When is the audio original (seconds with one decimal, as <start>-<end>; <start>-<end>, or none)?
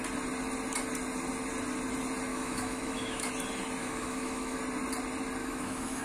0.0-2.3; 3.3-3.8; 4.6-5.4